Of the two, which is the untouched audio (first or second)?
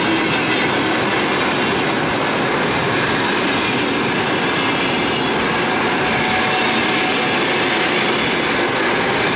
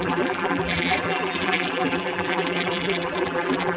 first